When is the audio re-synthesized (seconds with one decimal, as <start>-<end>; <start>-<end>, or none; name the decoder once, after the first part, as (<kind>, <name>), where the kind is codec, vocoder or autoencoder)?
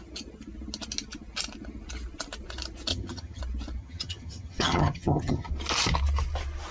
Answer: 2.9-3.4 (vocoder, HiFi-GAN); 3.8-5.5